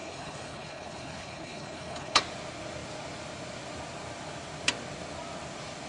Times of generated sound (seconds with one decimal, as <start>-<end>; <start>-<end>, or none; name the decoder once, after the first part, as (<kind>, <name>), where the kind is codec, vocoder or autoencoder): 0.0-2.2 (codec, HILCodec)